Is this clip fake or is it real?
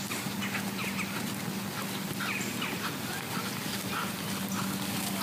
real